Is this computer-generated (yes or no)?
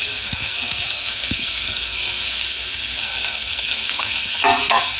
yes